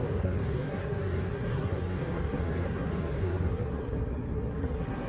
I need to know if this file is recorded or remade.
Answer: remade